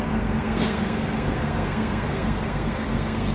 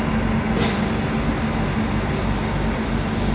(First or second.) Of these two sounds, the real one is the second